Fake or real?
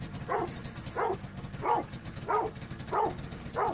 real